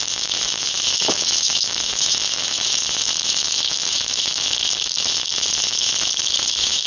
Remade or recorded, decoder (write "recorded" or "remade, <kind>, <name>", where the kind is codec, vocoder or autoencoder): remade, autoencoder, DAC-VAE